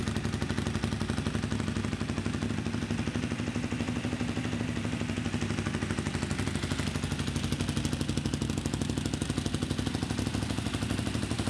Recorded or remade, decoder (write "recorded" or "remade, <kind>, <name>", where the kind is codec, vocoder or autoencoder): recorded